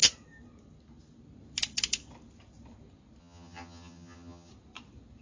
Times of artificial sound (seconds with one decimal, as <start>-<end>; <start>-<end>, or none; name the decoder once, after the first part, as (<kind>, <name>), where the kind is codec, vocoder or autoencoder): 3.2-4.5 (vocoder, HiFi-GAN)